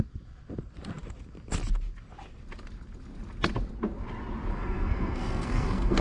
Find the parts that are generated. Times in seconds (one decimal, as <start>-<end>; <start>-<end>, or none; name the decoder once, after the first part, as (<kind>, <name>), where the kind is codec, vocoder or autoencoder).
4.5-6.0 (codec, SNAC)